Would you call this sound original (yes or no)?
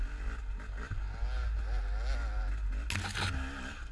yes